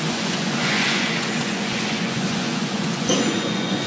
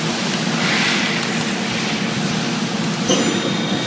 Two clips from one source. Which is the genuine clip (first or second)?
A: second